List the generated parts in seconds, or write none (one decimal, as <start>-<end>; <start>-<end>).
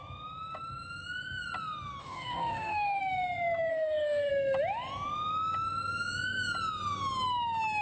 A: 2.0-3.0; 3.7-4.3